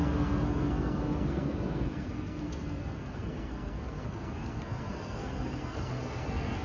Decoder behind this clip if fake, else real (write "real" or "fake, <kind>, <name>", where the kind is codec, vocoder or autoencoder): fake, codec, SNAC